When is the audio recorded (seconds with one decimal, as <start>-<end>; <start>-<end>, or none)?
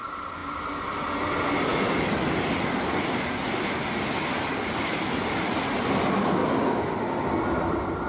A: 0.0-8.1